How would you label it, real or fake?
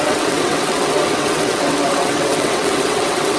fake